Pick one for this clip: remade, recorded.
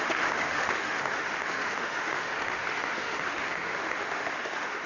remade